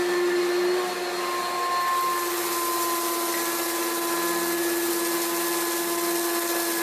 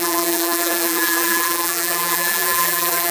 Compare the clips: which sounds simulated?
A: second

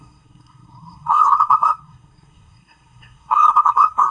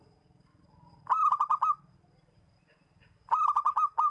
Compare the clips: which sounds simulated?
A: first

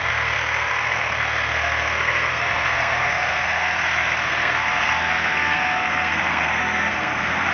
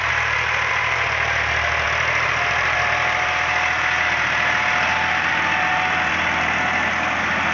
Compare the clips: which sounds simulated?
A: first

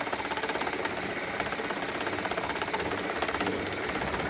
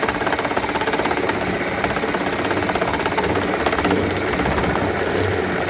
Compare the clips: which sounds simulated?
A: first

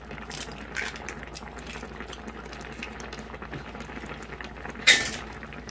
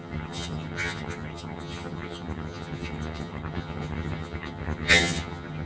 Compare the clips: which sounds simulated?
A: second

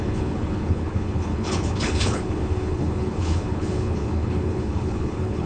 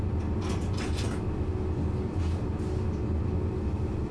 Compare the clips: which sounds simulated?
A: first